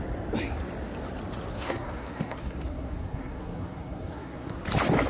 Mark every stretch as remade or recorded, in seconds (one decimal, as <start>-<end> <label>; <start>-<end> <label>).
0.0-1.5 recorded; 1.5-4.6 remade; 4.6-5.1 recorded